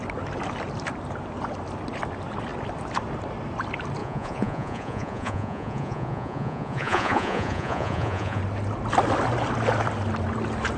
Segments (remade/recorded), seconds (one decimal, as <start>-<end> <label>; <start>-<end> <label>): 0.0-4.0 recorded; 4.0-8.4 remade; 8.4-10.8 recorded